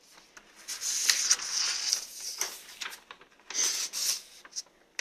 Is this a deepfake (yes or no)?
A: no